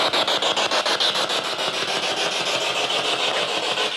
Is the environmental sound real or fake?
real